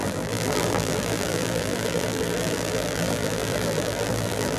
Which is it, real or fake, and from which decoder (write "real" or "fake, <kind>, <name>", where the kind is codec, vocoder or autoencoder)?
fake, vocoder, BigVGAN v2